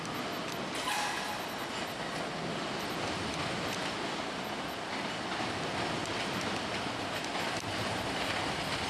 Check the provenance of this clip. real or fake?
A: real